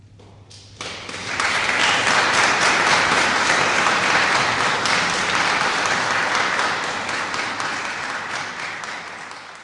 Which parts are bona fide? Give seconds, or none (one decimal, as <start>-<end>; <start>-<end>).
0.0-1.2; 4.0-9.6